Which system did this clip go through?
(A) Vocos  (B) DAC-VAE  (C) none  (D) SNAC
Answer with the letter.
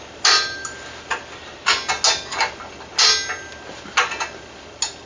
C